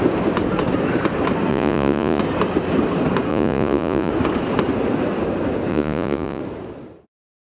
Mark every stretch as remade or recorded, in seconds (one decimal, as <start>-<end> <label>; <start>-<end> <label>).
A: 0.0-1.5 recorded; 1.5-2.2 remade; 2.2-3.3 recorded; 3.3-4.1 remade; 4.1-5.7 recorded; 5.7-6.4 remade; 6.4-7.4 recorded